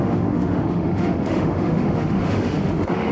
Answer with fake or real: fake